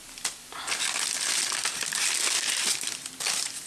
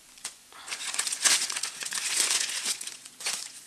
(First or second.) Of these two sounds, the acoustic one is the first